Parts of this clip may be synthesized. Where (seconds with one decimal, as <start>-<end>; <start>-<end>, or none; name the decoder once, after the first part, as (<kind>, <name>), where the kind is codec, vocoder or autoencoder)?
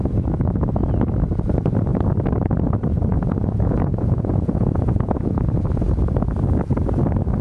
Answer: 3.1-5.8 (vocoder, Vocos)